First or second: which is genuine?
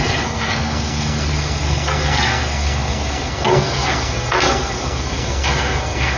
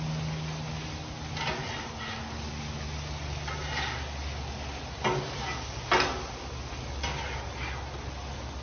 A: second